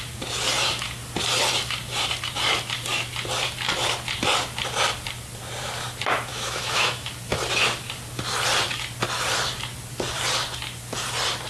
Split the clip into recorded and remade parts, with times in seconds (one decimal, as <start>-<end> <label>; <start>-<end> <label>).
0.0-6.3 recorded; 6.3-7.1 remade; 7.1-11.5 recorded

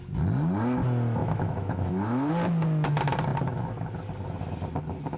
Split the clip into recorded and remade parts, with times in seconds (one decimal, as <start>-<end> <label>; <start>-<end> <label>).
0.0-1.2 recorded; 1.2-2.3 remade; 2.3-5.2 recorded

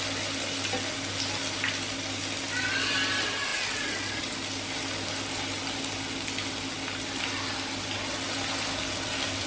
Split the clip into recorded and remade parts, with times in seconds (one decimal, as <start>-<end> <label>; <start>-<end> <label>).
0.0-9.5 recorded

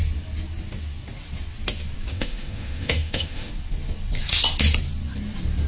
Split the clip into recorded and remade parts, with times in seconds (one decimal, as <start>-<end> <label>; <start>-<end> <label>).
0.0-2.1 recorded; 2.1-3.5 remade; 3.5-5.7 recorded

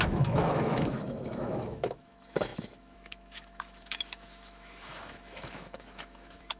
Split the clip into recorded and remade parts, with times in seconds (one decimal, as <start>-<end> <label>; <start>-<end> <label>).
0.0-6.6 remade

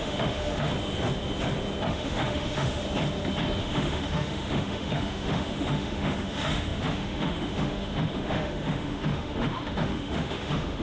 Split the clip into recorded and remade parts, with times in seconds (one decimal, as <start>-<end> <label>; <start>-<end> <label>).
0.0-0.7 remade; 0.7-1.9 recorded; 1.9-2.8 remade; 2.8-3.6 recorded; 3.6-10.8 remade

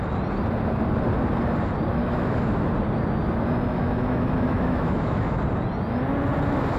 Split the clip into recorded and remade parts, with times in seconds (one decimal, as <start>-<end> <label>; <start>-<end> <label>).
0.0-2.0 recorded; 2.0-2.7 remade; 2.7-3.7 recorded; 3.7-5.4 remade; 5.4-6.8 recorded

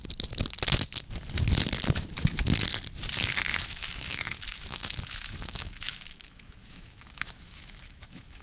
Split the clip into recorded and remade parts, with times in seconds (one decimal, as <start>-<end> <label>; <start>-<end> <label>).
0.0-3.5 recorded; 3.5-8.4 remade